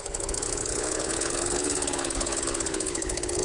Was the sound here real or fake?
fake